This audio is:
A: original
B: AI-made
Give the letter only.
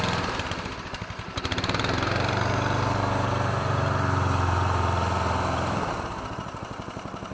B